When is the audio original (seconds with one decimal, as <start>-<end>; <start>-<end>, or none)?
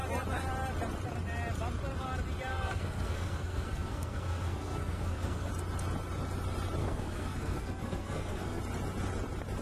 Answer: 0.0-2.5; 5.5-6.8; 8.6-9.6